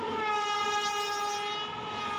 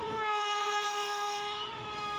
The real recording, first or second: first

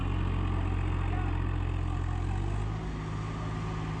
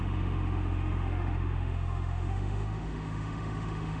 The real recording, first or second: first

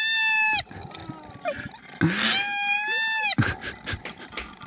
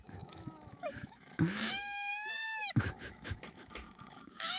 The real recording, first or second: first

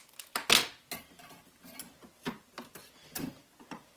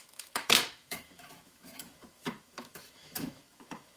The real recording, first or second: first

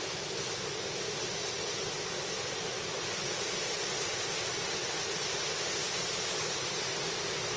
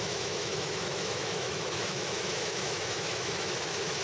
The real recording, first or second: first